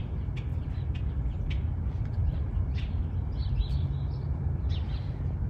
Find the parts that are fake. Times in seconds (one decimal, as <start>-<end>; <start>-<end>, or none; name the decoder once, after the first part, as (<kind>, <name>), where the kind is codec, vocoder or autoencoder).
none